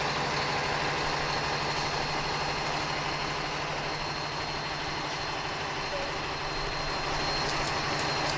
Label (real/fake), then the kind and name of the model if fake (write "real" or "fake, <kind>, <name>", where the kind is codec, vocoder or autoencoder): real